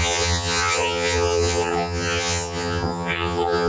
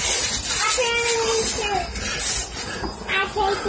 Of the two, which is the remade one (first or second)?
first